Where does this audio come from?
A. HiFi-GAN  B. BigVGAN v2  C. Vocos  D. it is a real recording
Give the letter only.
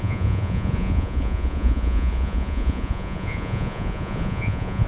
C